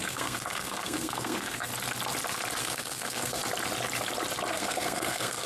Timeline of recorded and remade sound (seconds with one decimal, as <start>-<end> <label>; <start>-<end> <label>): 0.0-1.7 remade; 1.7-2.6 recorded; 2.6-3.4 remade; 3.4-4.5 recorded; 4.5-5.5 remade